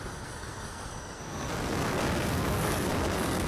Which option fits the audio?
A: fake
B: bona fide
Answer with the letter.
A